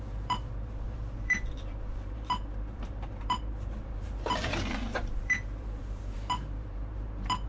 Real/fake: fake